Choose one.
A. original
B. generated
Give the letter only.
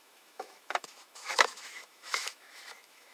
B